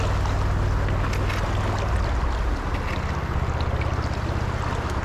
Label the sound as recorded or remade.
recorded